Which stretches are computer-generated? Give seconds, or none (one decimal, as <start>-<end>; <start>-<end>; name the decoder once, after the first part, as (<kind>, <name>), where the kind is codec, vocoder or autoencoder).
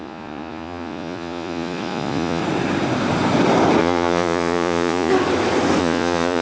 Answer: 0.0-2.4 (vocoder, Vocos); 3.8-5.1; 5.8-6.4